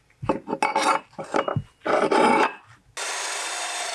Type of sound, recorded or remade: recorded